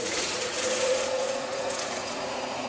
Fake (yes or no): yes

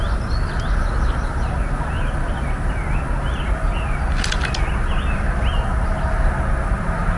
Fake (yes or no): no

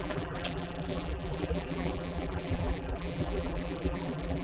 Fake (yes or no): yes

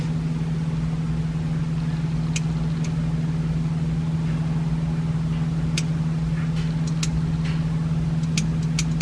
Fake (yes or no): no